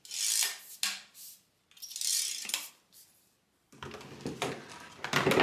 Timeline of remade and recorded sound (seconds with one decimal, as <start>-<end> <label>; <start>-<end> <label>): 0.0-2.1 recorded; 2.1-2.7 remade; 2.7-5.4 recorded